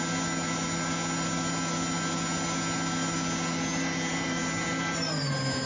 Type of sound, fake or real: real